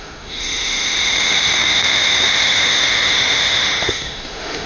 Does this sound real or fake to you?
fake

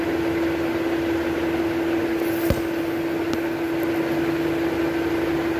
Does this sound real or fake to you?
real